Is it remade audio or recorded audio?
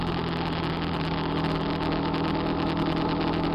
recorded